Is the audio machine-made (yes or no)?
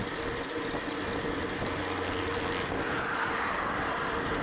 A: no